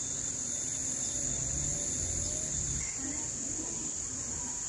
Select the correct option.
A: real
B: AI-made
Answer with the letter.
A